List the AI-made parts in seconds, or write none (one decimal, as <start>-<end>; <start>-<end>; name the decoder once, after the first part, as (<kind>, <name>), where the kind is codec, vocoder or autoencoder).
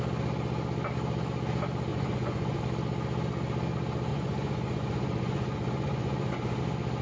1.9-2.6 (vocoder, Vocos); 4.1-6.6